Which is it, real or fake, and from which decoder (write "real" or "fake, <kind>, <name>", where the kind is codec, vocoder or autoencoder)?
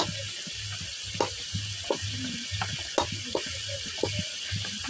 real